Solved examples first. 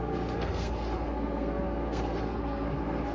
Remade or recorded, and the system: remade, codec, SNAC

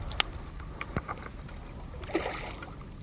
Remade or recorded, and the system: recorded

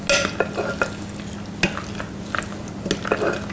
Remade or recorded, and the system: recorded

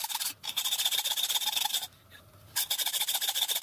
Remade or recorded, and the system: remade, vocoder, BigVGAN v2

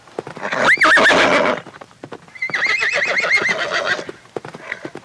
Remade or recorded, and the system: recorded